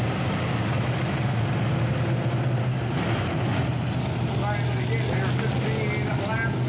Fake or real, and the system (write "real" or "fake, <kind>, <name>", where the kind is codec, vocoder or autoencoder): real